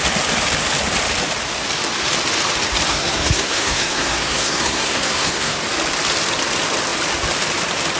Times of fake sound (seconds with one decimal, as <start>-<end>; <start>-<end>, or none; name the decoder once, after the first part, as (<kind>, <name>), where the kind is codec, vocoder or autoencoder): 2.9-5.6 (codec, SNAC)